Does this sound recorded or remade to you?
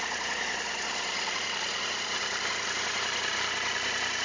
recorded